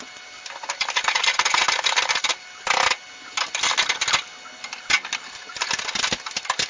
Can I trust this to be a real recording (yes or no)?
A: yes